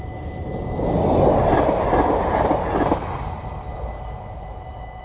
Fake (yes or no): no